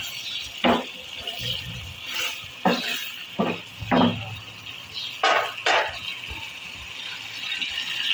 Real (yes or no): yes